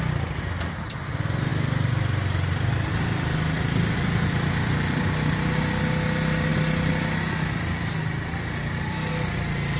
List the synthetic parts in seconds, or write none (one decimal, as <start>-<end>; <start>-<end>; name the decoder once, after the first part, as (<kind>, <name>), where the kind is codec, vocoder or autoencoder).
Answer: none